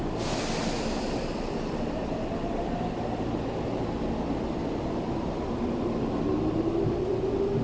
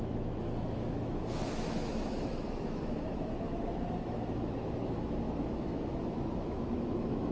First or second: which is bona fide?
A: first